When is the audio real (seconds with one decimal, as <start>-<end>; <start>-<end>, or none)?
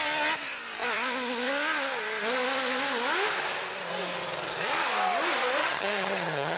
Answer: 0.0-5.6